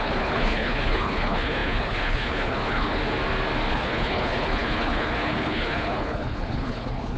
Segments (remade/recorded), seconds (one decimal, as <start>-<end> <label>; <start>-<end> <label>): 0.0-3.0 remade; 3.0-3.7 recorded; 3.7-7.2 remade